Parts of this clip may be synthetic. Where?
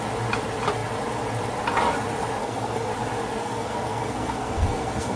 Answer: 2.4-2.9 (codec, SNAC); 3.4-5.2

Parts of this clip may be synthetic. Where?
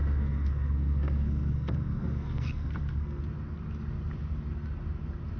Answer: 0.0-3.2 (codec, SNAC)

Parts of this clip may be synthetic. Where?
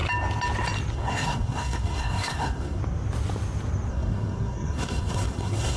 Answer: 0.9-2.8 (codec, SNAC); 3.9-5.8